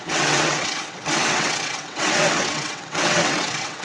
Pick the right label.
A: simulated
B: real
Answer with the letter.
A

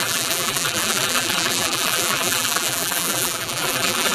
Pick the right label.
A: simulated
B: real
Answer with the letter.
A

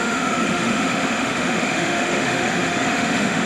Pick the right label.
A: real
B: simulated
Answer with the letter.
B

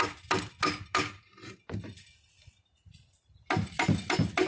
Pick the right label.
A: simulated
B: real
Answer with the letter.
B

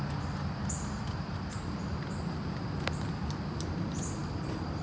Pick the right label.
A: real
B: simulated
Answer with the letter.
A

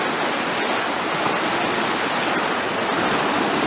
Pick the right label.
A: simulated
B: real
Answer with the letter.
B